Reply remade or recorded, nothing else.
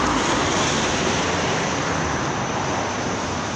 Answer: recorded